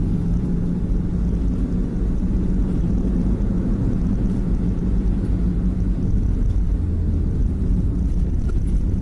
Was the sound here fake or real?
real